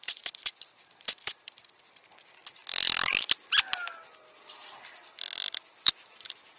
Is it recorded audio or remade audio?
remade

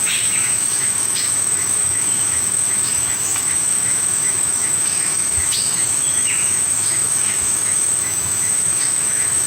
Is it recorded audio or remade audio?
remade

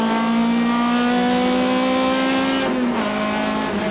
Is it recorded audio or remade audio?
recorded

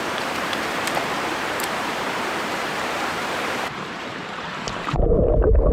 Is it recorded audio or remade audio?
remade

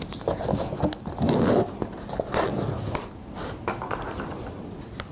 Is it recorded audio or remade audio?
recorded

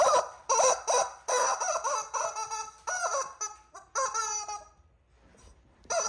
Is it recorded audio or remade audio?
remade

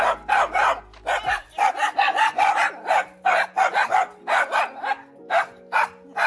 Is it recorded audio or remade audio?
recorded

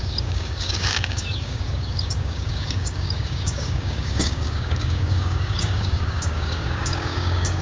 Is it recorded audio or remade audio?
remade